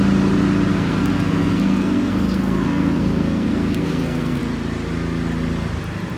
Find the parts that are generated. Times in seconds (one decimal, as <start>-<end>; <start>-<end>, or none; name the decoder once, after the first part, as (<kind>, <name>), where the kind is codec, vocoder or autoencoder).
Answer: 0.7-4.4 (codec, SNAC)